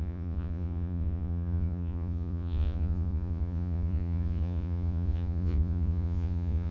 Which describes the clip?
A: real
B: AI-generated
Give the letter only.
B